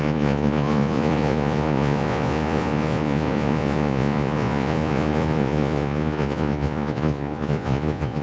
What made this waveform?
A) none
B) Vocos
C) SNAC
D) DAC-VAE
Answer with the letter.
B